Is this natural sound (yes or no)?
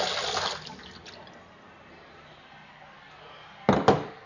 yes